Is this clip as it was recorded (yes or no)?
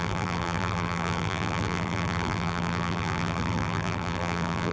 no